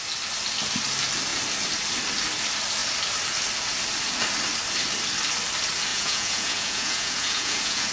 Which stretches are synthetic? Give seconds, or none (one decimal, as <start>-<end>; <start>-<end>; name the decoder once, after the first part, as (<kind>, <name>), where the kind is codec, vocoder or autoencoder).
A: 5.9-7.9 (vocoder, Vocos)